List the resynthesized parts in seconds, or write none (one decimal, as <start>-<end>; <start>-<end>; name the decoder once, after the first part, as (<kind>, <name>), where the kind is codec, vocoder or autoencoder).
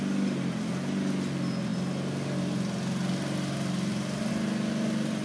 none